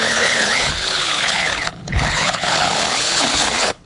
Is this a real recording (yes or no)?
no